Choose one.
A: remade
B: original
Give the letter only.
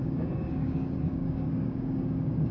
A